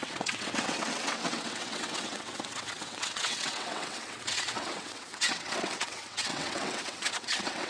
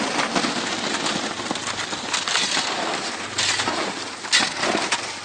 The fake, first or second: first